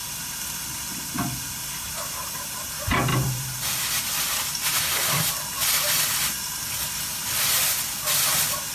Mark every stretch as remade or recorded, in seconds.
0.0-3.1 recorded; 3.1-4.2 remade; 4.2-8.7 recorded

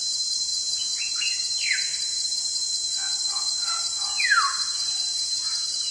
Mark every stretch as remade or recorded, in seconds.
0.0-5.9 recorded

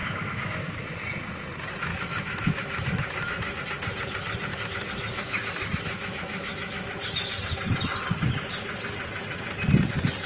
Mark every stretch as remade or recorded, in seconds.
0.0-0.8 remade; 0.8-1.9 recorded; 1.9-3.6 remade; 3.6-4.5 recorded; 4.5-7.3 remade; 7.3-10.3 recorded